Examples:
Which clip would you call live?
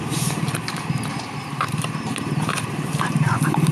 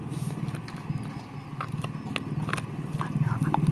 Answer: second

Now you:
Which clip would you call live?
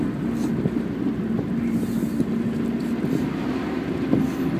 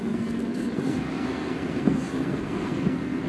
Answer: first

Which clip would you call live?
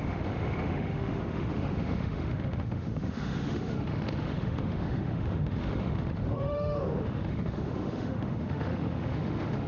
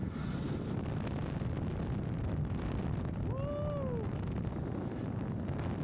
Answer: second